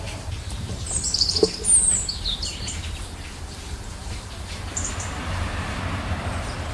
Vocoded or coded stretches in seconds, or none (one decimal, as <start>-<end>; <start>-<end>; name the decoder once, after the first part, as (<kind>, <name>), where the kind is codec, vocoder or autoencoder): 0.0-6.7 (vocoder, BigVGAN v2)